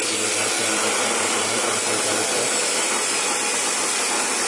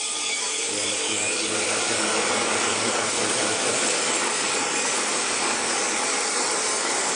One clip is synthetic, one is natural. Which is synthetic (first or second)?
second